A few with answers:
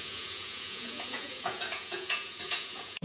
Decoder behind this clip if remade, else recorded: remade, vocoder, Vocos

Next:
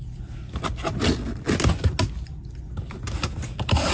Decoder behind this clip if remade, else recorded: recorded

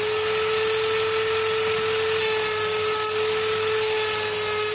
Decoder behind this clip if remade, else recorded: recorded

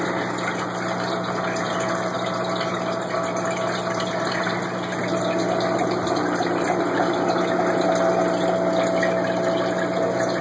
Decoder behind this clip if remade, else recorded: recorded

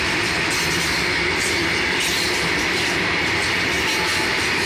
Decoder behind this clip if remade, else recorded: remade, vocoder, BigVGAN v2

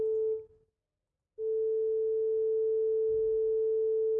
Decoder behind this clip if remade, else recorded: recorded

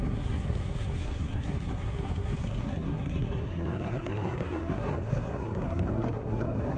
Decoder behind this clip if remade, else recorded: remade, codec, SNAC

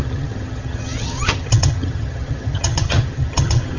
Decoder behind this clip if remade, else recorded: remade, vocoder, HiFi-GAN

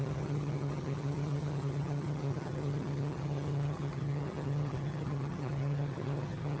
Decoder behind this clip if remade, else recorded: remade, vocoder, HiFi-GAN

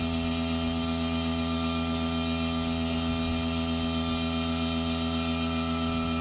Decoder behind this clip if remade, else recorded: recorded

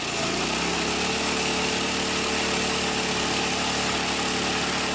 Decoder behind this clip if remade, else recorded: recorded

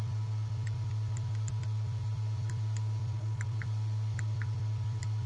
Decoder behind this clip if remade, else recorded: remade, vocoder, BigVGAN v2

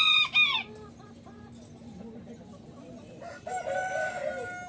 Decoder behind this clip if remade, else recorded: recorded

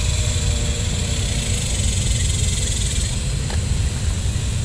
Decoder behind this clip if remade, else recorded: recorded